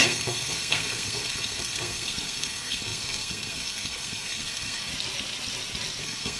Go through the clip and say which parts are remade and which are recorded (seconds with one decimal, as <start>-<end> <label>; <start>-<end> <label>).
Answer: 0.0-4.9 remade; 4.9-6.0 recorded; 6.0-6.4 remade